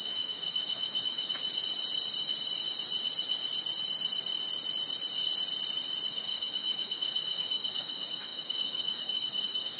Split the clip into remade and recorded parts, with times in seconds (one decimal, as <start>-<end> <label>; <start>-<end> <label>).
0.0-1.3 remade; 1.3-6.1 recorded; 6.1-9.8 remade

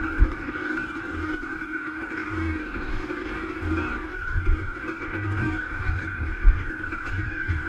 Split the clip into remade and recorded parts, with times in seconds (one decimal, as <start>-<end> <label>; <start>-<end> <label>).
0.0-7.7 remade